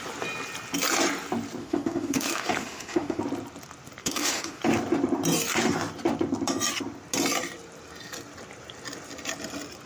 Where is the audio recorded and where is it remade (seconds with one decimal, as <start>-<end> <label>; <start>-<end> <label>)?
0.0-1.6 recorded; 1.6-3.2 remade; 3.2-4.0 recorded; 4.0-4.6 remade; 4.6-9.9 recorded